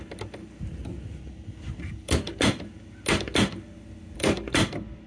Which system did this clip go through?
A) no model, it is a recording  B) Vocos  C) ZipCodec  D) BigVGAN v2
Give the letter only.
A